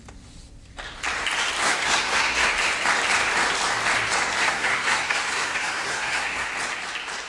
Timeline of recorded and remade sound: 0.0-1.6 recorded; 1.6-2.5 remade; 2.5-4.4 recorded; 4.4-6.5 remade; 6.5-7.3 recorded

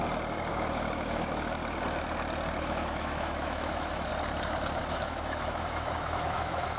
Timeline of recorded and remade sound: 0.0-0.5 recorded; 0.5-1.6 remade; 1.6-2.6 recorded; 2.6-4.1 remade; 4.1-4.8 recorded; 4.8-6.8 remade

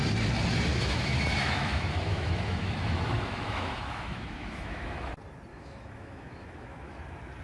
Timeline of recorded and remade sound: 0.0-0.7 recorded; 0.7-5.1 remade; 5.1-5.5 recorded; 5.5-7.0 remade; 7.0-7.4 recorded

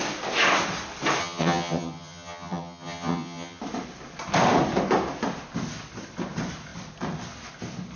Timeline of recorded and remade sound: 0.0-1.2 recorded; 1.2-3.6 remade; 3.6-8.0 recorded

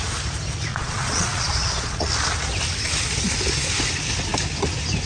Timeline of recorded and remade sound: 0.0-0.7 recorded; 0.7-2.1 remade; 2.1-5.1 recorded

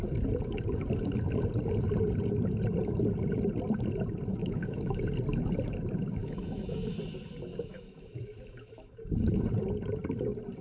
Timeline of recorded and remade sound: 0.0-4.3 recorded; 4.3-5.0 remade; 5.0-6.2 recorded; 6.2-7.0 remade; 7.0-7.5 recorded; 7.5-9.4 remade; 9.4-10.6 recorded

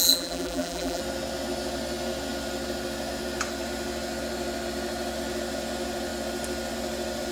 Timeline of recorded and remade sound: 0.0-1.0 remade; 1.0-7.3 recorded